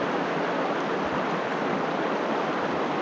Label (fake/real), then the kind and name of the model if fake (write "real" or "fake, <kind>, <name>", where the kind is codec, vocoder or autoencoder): real